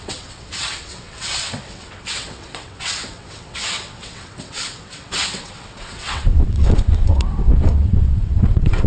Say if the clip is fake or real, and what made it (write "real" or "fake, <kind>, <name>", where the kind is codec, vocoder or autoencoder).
fake, vocoder, WaveNeXt